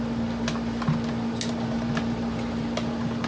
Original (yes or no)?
yes